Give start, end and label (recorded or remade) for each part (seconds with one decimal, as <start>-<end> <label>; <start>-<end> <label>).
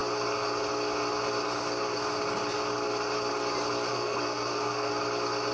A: 0.0-3.9 recorded; 3.9-4.9 remade; 4.9-5.5 recorded